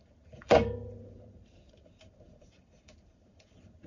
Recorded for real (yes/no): no